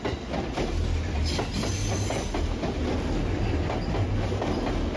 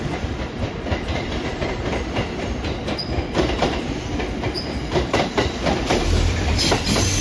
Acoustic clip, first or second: first